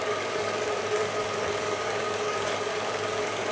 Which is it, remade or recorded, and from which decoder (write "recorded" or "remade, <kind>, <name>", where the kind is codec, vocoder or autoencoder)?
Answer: remade, codec, DAC